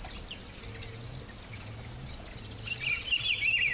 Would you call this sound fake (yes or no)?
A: no